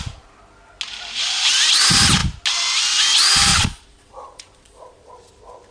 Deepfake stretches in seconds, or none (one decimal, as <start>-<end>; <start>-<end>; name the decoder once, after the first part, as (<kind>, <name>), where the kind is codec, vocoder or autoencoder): 3.5-5.1 (vocoder, Vocos)

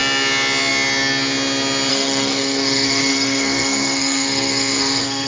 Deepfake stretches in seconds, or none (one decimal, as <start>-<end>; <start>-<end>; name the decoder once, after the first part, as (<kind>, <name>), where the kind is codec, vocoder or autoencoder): 1.9-5.3 (codec, SNAC)

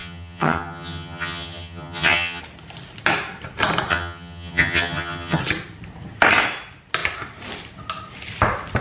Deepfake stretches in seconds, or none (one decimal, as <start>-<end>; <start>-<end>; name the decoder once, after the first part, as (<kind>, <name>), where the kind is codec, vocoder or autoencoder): 0.0-2.4 (vocoder, HiFi-GAN); 3.9-5.4

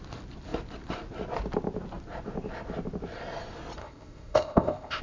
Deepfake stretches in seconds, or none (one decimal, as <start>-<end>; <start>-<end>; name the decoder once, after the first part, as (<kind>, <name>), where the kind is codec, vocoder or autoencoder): 3.8-5.0 (codec, ZipCodec)

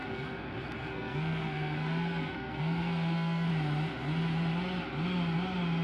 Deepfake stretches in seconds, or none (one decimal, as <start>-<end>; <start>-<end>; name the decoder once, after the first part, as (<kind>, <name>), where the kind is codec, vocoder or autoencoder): 0.0-3.5 (codec, SNAC)

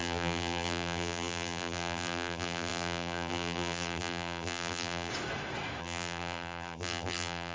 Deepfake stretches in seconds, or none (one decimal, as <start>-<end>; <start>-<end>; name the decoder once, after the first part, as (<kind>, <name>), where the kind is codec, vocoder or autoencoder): 0.0-5.1 (vocoder, BigVGAN v2); 5.8-7.5

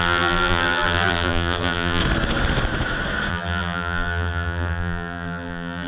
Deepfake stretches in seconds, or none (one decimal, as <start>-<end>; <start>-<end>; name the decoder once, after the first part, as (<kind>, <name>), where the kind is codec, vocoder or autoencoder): 0.0-2.0 (vocoder, BigVGAN v2); 3.3-5.9